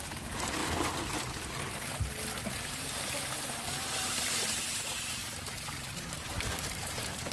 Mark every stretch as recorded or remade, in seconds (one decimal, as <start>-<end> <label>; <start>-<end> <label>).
0.0-0.6 remade; 0.6-4.0 recorded; 4.0-7.3 remade